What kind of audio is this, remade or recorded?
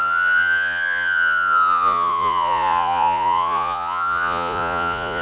remade